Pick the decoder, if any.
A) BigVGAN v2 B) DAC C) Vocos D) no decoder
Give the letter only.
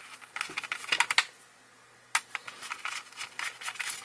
D